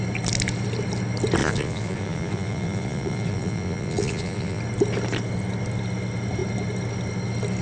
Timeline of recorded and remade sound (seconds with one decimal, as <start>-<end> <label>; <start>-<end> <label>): 0.0-1.4 recorded; 1.4-4.6 remade; 4.6-7.6 recorded